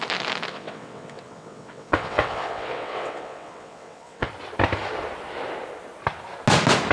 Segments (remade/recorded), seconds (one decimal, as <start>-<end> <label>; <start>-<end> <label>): 0.0-0.5 recorded; 0.5-4.3 remade; 4.3-6.9 recorded

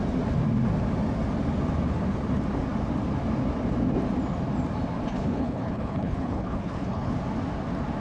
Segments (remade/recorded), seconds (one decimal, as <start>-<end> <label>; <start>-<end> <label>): 0.0-5.1 recorded; 5.1-7.1 remade; 7.1-8.0 recorded

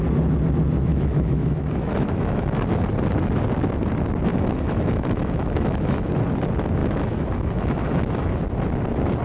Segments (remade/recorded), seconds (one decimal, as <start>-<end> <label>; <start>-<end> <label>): 0.0-0.9 recorded; 0.9-2.7 remade; 2.7-4.3 recorded; 4.3-6.1 remade; 6.1-6.8 recorded; 6.8-8.3 remade; 8.3-9.2 recorded

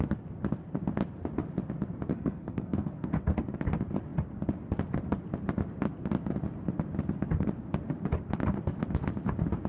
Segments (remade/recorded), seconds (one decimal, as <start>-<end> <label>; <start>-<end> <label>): 0.0-2.1 recorded; 2.1-3.1 remade; 3.1-9.7 recorded